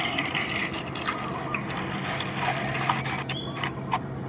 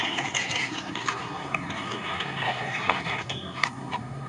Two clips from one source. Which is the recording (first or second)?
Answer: first